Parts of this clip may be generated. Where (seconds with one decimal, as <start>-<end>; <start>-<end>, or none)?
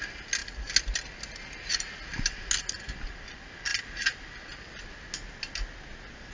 none